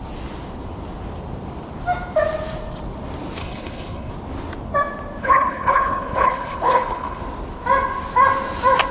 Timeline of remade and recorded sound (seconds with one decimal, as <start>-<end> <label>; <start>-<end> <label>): 0.0-3.4 recorded; 3.4-4.1 remade; 4.1-5.2 recorded; 5.2-7.2 remade; 7.2-8.9 recorded